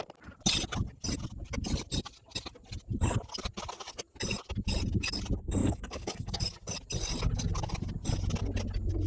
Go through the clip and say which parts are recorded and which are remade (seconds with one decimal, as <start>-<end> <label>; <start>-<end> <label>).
0.0-5.6 recorded; 5.6-6.4 remade; 6.4-9.1 recorded